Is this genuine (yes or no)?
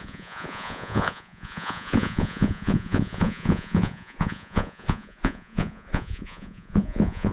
no